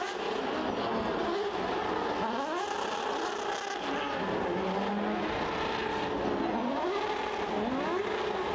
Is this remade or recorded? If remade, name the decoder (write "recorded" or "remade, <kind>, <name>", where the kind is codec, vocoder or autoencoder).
recorded